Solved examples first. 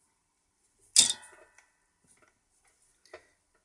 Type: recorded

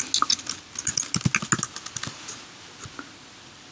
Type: recorded